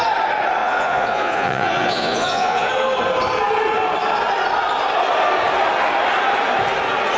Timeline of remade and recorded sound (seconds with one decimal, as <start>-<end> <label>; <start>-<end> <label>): 0.0-0.6 recorded; 0.6-2.7 remade; 2.7-7.2 recorded